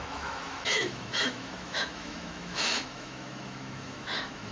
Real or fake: fake